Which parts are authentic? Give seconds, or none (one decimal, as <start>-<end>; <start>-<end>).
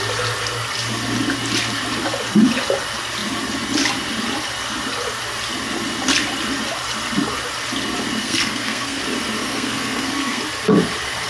0.0-8.2; 9.0-9.4; 10.4-11.3